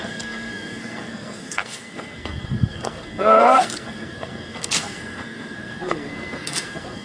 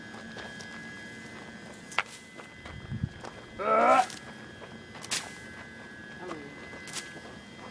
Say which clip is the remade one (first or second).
first